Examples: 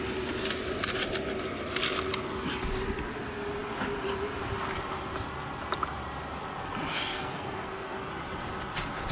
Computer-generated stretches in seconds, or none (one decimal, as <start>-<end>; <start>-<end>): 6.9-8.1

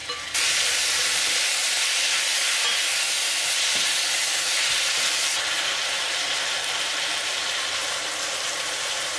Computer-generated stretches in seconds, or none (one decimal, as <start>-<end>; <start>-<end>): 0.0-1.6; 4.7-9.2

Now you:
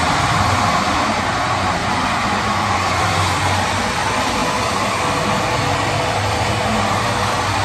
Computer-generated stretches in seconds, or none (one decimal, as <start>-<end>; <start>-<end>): 1.8-3.0

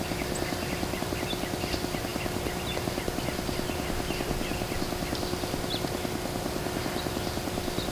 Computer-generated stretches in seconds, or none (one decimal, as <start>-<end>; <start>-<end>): none